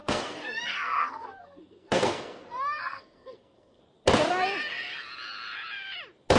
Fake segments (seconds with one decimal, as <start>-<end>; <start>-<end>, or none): 0.0-3.8